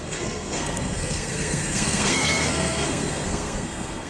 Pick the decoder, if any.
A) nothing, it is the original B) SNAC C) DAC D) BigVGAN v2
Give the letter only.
B